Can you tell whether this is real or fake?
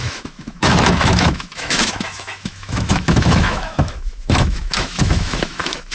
fake